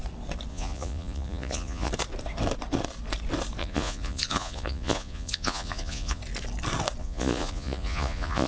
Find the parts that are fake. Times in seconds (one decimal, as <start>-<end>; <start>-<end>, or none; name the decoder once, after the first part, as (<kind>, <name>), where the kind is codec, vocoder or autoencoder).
0.5-1.9 (vocoder, Vocos); 3.6-6.2; 7.0-8.5